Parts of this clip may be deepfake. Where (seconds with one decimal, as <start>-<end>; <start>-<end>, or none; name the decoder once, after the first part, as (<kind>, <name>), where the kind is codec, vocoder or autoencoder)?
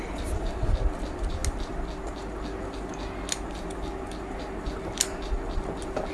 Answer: none